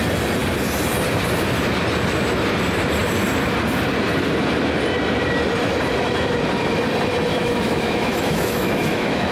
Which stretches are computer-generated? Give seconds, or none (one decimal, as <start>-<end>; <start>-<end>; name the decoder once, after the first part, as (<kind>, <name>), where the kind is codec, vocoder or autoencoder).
7.3-9.3 (autoencoder, DAC-VAE)

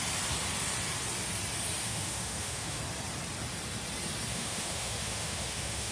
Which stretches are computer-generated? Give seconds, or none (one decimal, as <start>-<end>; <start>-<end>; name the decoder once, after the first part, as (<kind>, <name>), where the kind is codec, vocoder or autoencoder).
1.8-2.8 (autoencoder, DAC-VAE); 4.3-5.9

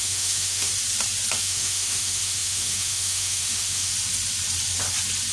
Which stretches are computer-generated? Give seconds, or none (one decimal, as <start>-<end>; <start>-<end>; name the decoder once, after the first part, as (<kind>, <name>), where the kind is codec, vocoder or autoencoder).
0.0-0.7 (autoencoder, DAC-VAE); 1.4-3.9